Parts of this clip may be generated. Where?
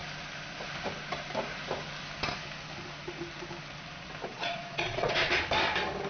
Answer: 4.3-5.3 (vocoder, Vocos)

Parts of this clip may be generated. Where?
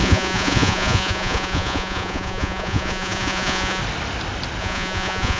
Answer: 0.0-3.8 (vocoder, Vocos); 4.6-5.4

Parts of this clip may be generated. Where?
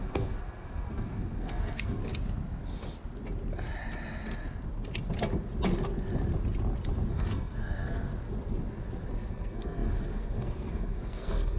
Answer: 0.0-2.0 (codec, SNAC); 7.1-8.1; 9.3-11.6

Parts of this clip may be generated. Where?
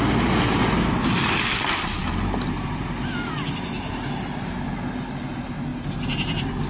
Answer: none